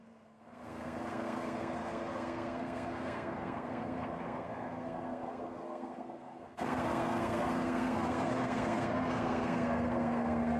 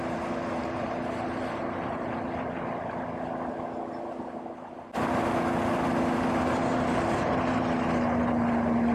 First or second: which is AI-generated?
first